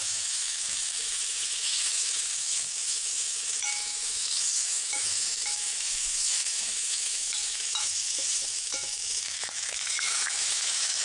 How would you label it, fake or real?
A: fake